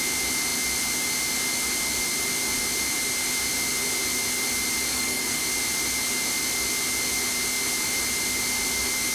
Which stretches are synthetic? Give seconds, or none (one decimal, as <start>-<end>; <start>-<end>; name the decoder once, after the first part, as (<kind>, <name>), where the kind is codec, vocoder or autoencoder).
4.9-5.4 (codec, SNAC)